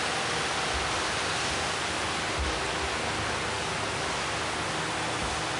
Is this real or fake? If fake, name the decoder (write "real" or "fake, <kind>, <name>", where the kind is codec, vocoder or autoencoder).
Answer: real